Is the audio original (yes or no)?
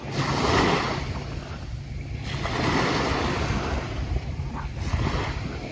yes